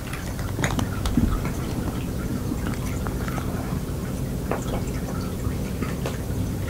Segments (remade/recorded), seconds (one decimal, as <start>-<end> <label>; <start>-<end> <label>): 0.0-6.7 recorded